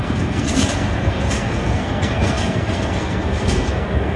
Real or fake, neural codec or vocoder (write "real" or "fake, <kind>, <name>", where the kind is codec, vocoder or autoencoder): fake, codec, SNAC